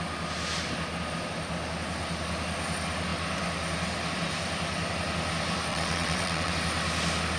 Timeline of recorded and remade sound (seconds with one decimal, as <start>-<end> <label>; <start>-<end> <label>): 0.0-5.7 recorded; 5.7-6.5 remade; 6.5-7.4 recorded